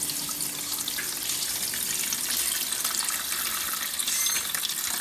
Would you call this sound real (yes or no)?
yes